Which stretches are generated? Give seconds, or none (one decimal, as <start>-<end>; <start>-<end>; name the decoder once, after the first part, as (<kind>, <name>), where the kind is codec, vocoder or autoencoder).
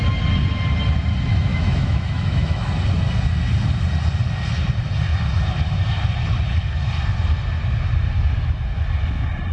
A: 1.5-2.7 (autoencoder, DAC-VAE)